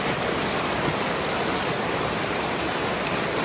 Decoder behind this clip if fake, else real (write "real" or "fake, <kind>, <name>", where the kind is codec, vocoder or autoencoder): real